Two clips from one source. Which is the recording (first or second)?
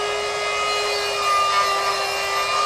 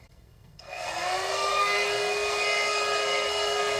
first